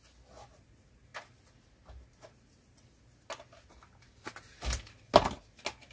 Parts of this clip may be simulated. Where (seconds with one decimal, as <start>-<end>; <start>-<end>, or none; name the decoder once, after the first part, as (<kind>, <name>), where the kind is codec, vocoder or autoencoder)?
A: none